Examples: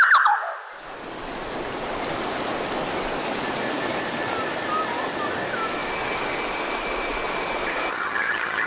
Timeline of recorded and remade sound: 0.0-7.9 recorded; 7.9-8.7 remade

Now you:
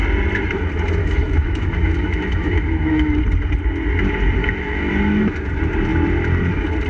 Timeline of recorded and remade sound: 0.0-1.0 recorded; 1.0-3.2 remade; 3.2-4.4 recorded; 4.4-4.9 remade; 4.9-6.9 recorded

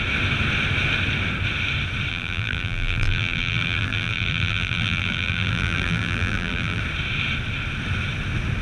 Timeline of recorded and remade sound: 0.0-2.1 recorded; 2.1-6.8 remade; 6.8-8.6 recorded

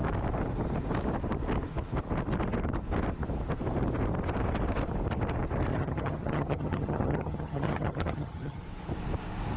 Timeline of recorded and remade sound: 0.0-5.7 recorded; 5.7-8.6 remade; 8.6-9.6 recorded

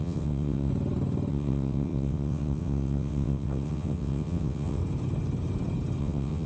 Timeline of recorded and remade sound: 0.0-0.7 remade; 0.7-1.3 recorded; 1.3-4.8 remade; 4.8-6.0 recorded; 6.0-6.5 remade

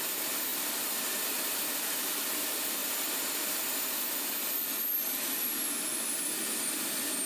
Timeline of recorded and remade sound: 0.0-7.3 remade

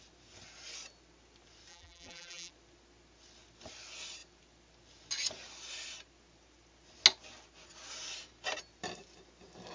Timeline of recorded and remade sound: 0.0-1.7 recorded; 1.7-2.5 remade; 2.5-9.7 recorded